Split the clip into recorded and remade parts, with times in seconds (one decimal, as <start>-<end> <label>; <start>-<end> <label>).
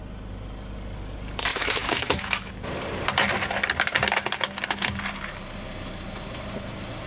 0.0-1.5 recorded; 1.5-2.5 remade; 2.5-7.1 recorded